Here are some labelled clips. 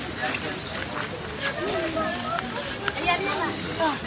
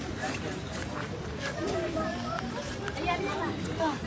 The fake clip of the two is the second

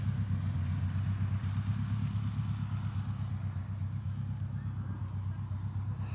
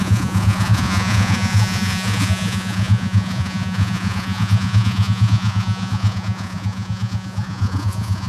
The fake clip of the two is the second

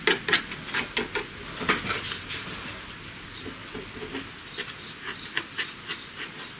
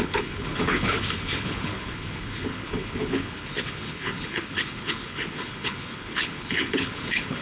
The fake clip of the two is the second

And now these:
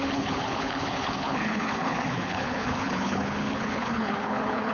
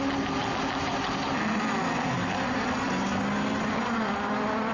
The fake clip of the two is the first